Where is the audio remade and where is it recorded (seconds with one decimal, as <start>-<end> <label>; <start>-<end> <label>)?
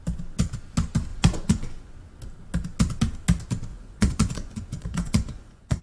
0.0-1.1 recorded; 1.1-1.9 remade; 1.9-3.7 recorded; 3.7-5.8 remade